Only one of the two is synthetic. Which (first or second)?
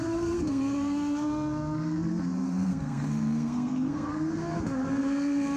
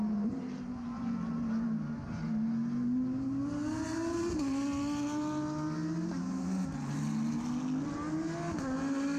first